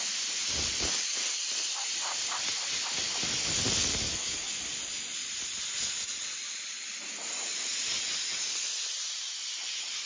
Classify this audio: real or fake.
real